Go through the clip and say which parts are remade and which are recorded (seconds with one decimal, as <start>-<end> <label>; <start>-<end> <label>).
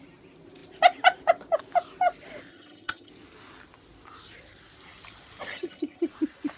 0.0-2.5 recorded; 2.5-3.1 remade; 3.1-5.5 recorded; 5.5-6.1 remade; 6.1-6.6 recorded